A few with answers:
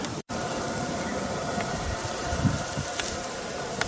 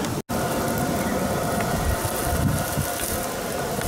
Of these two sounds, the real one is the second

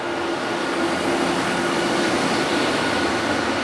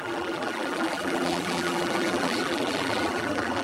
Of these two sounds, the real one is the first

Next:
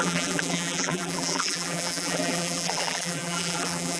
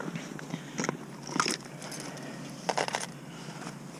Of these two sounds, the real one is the second